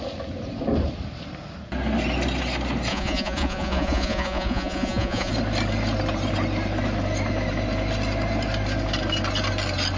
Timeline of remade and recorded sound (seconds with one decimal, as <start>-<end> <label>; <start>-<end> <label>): 0.0-2.9 recorded; 2.9-5.3 remade; 5.3-10.0 recorded